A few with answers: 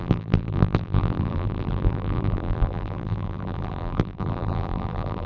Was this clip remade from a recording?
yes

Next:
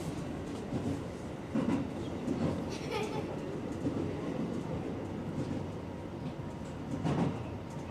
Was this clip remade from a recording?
no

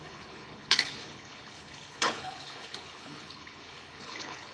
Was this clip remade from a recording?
yes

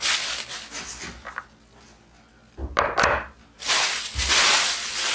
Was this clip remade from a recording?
no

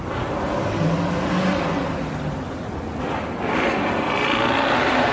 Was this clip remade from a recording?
no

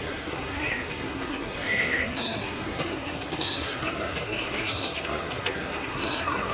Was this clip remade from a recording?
yes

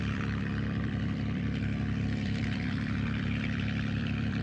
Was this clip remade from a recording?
yes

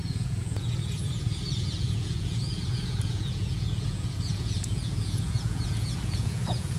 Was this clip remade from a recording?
yes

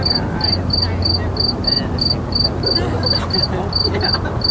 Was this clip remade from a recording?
no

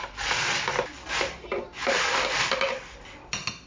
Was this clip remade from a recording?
no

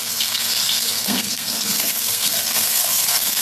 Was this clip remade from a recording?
yes